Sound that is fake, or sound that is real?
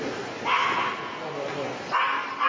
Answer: real